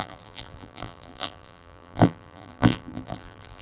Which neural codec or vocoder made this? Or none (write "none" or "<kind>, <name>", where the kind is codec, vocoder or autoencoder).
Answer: vocoder, BigVGAN v2